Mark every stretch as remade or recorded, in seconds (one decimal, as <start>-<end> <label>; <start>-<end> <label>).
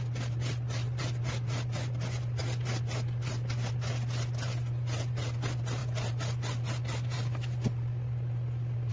0.0-8.9 recorded